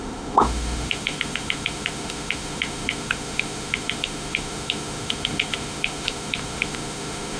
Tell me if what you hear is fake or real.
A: fake